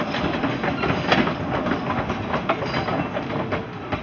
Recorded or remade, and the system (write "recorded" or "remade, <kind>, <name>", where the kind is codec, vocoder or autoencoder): recorded